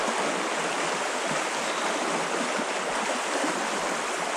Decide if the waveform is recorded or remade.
recorded